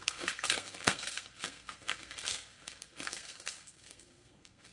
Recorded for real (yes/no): no